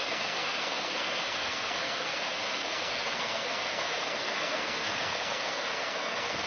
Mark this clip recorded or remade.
remade